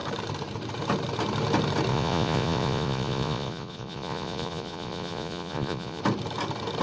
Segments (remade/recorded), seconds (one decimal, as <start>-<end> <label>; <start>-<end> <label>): 0.0-1.9 recorded; 1.9-6.0 remade; 6.0-6.8 recorded